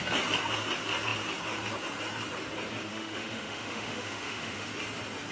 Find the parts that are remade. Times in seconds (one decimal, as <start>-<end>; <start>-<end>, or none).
2.9-4.7

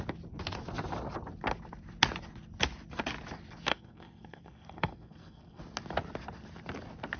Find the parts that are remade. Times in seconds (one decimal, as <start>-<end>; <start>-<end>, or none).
3.7-5.6

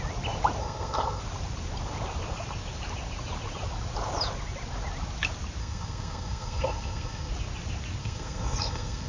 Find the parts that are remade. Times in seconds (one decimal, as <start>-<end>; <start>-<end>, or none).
0.6-1.2; 5.6-7.3; 8.0-9.1